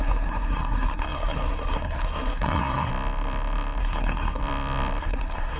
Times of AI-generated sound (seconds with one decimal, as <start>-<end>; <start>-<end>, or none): 0.0-2.9; 3.8-4.4; 5.0-5.6